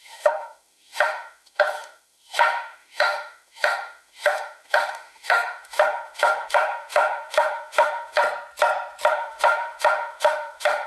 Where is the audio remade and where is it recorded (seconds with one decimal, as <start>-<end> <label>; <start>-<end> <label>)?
0.0-8.2 remade; 8.2-9.1 recorded; 9.1-10.9 remade